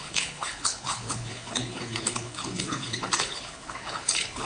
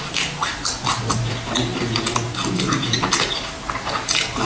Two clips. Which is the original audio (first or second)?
second